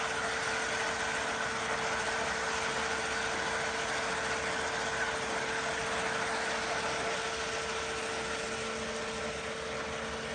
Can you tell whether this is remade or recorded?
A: recorded